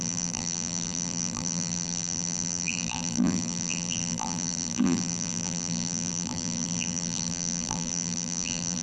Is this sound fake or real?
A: fake